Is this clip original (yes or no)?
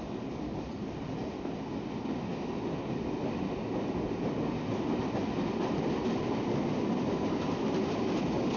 yes